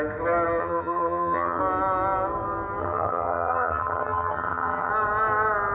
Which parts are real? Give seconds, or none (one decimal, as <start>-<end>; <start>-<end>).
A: 0.0-0.6; 1.6-2.8; 4.9-5.7